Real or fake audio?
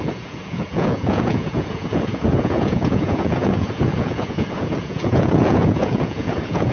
fake